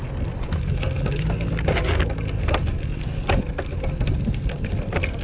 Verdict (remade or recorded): recorded